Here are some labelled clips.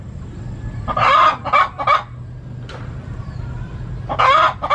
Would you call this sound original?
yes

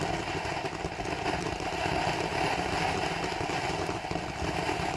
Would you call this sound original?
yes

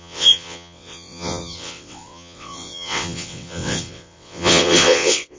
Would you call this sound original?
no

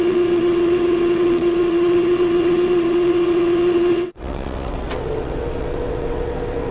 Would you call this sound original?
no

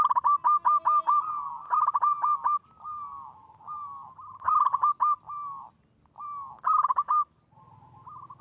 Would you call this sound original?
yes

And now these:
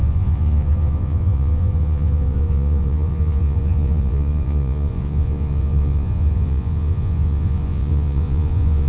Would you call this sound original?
no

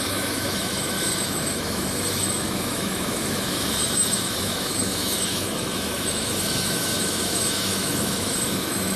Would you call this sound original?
no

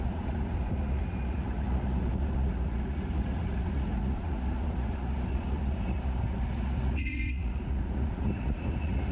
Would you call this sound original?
no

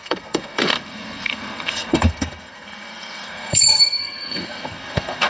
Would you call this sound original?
no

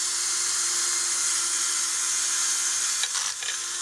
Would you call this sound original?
yes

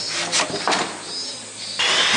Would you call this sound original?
yes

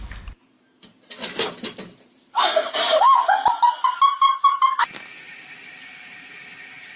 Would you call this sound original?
yes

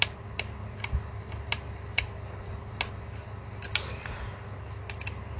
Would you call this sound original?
yes